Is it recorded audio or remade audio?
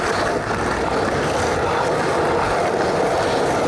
recorded